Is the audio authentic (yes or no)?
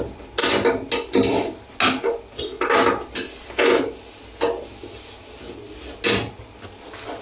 yes